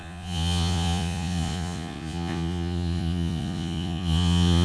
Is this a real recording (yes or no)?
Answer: no